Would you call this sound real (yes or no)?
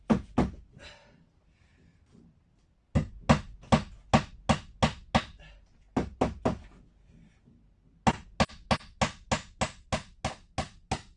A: yes